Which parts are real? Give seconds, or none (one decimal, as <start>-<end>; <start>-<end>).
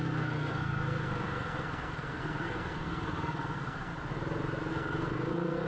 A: 3.9-4.7